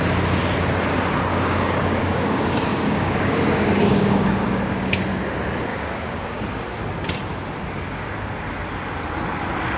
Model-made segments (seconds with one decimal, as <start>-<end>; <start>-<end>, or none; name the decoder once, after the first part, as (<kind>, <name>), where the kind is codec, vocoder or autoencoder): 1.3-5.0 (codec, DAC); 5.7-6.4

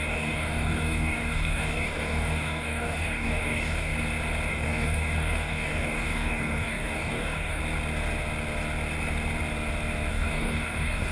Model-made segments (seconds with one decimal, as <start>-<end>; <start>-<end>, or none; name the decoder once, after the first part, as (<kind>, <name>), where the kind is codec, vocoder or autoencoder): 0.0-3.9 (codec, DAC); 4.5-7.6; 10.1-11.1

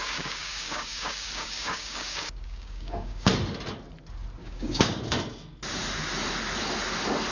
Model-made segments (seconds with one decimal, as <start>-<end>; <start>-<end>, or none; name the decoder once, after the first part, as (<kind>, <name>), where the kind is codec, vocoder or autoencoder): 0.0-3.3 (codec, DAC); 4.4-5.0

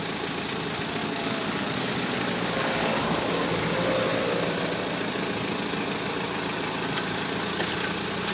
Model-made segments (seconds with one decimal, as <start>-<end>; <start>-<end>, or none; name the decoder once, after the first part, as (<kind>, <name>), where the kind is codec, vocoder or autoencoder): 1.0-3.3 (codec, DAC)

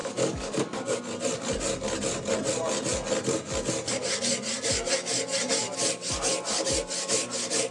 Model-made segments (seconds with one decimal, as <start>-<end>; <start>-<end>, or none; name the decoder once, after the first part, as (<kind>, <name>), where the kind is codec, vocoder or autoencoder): 0.0-1.0 (codec, DAC)

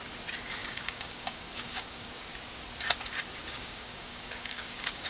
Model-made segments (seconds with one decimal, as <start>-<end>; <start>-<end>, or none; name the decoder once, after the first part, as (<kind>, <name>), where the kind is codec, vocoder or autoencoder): 0.6-2.3 (codec, DAC); 3.4-5.1

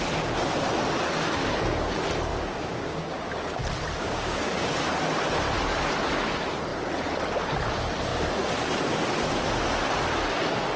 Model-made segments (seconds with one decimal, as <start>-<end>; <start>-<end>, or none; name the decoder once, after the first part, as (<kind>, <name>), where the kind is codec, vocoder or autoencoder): 2.3-3.6 (codec, DAC); 4.0-4.7

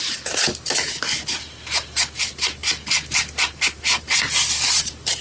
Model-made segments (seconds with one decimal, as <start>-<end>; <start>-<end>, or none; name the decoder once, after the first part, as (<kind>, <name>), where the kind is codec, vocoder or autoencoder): none